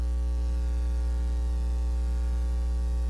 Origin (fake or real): real